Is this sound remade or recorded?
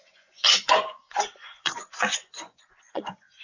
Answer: remade